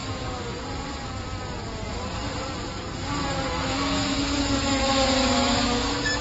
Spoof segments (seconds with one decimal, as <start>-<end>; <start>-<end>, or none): 3.5-4.9; 5.4-6.2